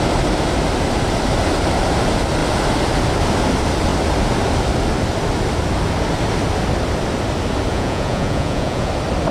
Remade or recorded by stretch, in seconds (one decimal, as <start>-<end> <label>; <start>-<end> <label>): 0.0-7.7 recorded; 7.7-8.9 remade; 8.9-9.3 recorded